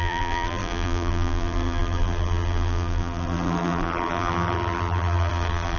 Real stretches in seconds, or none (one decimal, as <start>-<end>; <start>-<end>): none